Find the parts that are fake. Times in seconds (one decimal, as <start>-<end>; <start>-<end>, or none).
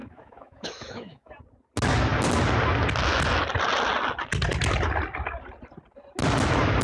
0.0-1.3